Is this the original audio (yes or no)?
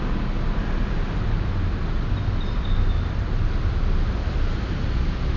yes